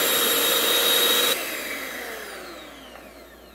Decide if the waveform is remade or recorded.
recorded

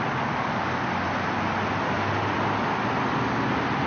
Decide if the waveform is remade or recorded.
recorded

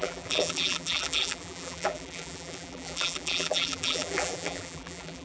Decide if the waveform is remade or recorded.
remade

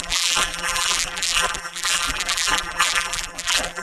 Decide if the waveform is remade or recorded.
remade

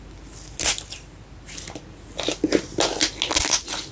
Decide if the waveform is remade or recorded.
recorded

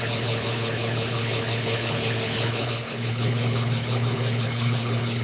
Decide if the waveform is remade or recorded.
remade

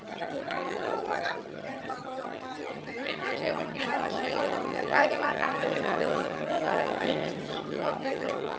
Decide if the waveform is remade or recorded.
remade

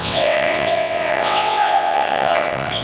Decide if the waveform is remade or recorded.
remade